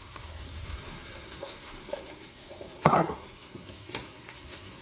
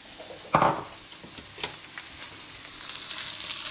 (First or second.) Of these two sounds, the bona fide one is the second